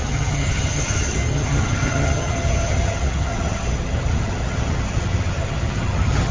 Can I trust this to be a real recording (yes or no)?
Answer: no